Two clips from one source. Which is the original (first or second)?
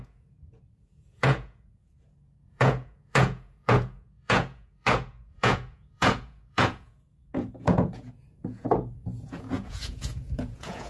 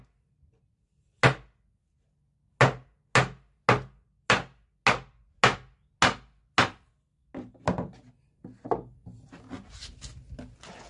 second